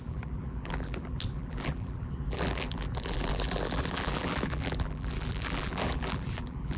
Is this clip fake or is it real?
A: fake